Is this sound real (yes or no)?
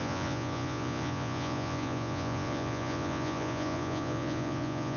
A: no